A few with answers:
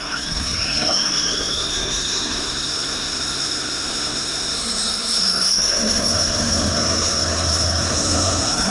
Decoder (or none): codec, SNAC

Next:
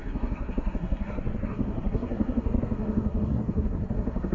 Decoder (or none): codec, SNAC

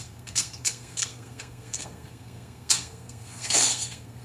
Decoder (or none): codec, SNAC